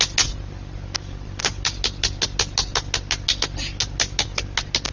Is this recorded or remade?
recorded